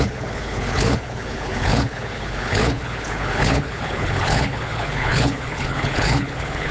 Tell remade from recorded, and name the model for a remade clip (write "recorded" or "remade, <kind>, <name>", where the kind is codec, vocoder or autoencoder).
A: remade, codec, HILCodec